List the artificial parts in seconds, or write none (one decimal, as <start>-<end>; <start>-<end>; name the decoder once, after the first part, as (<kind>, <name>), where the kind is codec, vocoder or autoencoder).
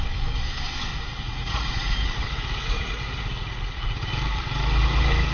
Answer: 0.9-4.1 (vocoder, Vocos)